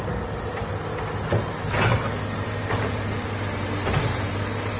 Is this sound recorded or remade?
recorded